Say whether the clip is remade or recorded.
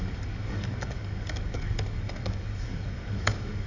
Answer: remade